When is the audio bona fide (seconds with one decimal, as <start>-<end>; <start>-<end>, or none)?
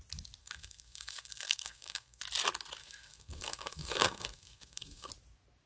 0.0-0.4; 2.2-2.8; 5.1-5.7